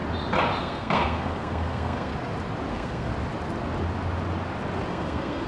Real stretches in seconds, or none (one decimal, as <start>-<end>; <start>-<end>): 0.0-0.6; 2.1-2.7; 3.1-4.9